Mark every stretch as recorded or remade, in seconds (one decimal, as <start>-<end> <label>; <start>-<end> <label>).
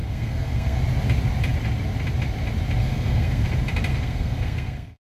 0.0-0.8 remade; 0.8-2.8 recorded; 2.8-3.5 remade; 3.5-3.9 recorded; 3.9-5.1 remade